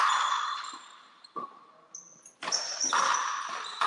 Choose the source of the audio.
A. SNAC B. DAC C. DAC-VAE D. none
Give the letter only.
D